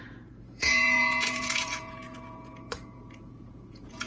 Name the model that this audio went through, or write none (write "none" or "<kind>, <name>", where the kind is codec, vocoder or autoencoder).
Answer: vocoder, Vocos